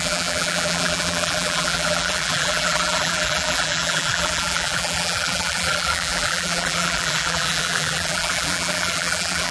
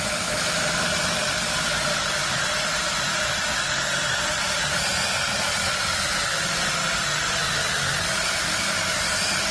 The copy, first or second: first